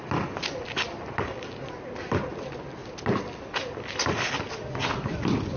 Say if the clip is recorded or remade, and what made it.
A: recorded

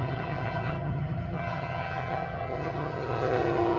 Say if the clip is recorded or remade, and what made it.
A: remade, vocoder, HiFi-GAN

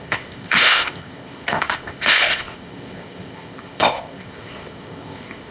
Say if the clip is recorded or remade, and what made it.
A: remade, codec, ZipCodec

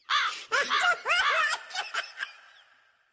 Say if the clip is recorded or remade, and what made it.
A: recorded